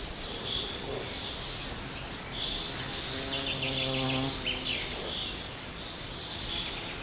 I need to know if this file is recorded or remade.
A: recorded